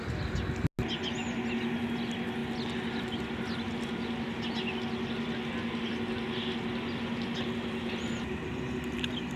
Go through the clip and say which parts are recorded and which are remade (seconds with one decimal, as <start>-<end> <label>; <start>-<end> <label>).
0.0-9.4 recorded